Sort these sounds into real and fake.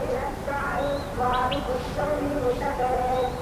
real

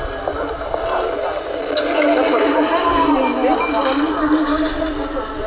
real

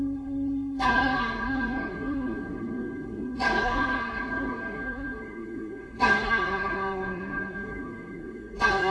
fake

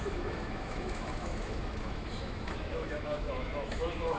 fake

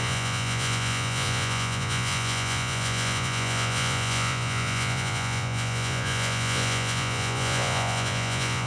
fake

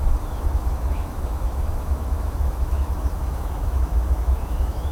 fake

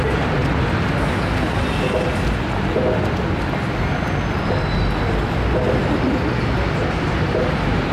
real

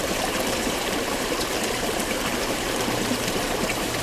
fake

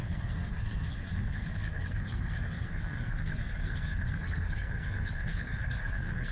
fake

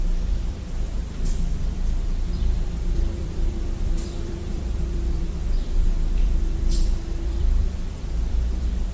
fake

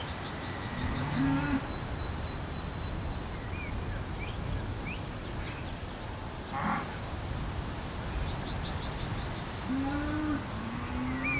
real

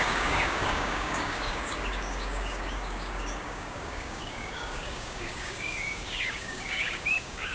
fake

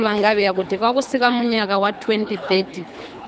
fake